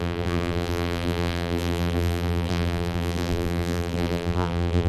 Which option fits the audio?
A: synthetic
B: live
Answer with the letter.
A